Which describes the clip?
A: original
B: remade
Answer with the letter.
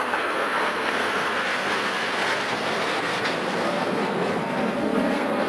B